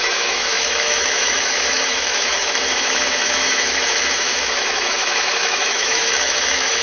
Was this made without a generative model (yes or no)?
no